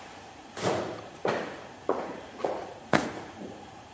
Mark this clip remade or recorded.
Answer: remade